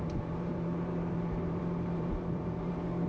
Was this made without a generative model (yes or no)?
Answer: no